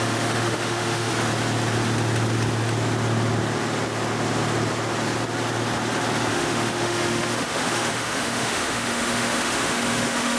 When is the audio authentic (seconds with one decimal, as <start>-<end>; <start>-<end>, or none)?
1.1-6.3